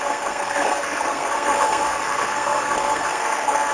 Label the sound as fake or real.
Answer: fake